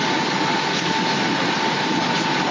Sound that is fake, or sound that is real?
real